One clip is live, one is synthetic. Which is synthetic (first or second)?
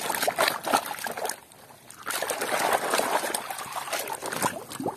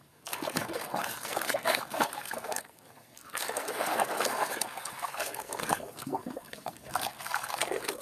second